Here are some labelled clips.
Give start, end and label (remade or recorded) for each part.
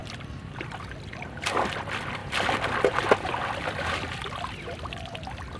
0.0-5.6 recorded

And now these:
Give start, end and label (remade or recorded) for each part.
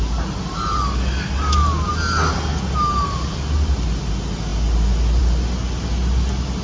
0.0-6.6 recorded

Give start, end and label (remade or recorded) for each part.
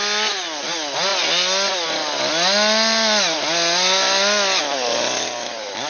0.0-5.9 recorded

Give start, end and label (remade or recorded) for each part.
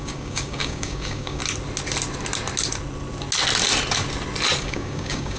0.0-1.4 remade; 1.4-4.6 recorded; 4.6-5.4 remade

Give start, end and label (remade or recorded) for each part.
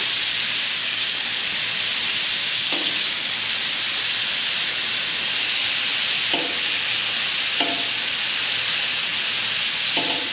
0.0-0.8 recorded; 0.8-1.4 remade; 1.4-2.4 recorded; 2.4-3.3 remade; 3.3-10.3 recorded